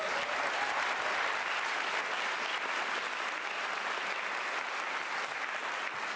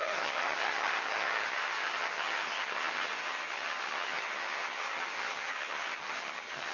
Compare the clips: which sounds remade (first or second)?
second